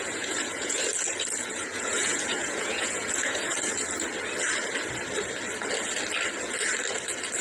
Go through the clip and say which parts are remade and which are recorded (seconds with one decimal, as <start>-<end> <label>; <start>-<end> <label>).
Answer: 0.0-0.8 remade; 0.8-1.4 recorded; 1.4-3.5 remade; 3.5-7.4 recorded